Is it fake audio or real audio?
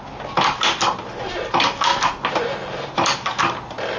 real